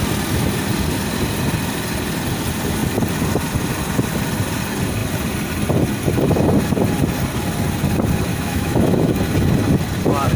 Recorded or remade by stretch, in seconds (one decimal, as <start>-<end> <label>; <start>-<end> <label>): 0.0-8.3 recorded; 8.3-9.2 remade; 9.2-10.4 recorded

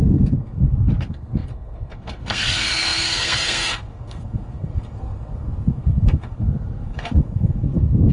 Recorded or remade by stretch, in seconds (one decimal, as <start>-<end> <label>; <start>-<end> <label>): 0.0-8.1 remade

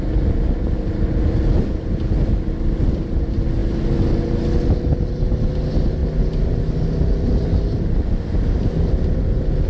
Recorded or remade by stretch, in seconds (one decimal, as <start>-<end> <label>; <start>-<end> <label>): 0.0-9.7 recorded

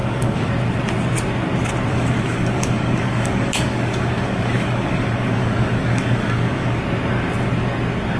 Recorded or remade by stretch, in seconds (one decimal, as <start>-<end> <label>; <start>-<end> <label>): 0.0-0.5 remade; 0.5-1.9 recorded; 1.9-6.8 remade; 6.8-8.2 recorded

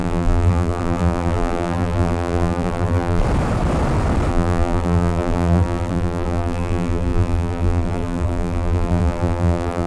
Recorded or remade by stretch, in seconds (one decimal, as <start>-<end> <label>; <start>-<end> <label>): 0.0-3.2 remade; 3.2-4.3 recorded; 4.3-9.9 remade

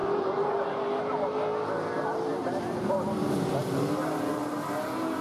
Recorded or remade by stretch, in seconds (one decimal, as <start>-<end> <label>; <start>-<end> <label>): 0.0-2.3 recorded; 2.3-3.5 remade; 3.5-5.2 recorded

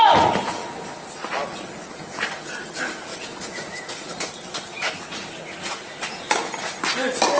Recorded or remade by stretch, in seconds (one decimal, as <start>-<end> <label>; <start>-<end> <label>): 0.0-3.1 recorded; 3.1-4.1 remade; 4.1-4.6 recorded; 4.6-5.9 remade; 5.9-7.4 recorded

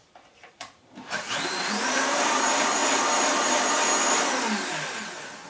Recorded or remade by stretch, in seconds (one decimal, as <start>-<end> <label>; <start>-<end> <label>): 0.0-2.8 remade; 2.8-5.5 recorded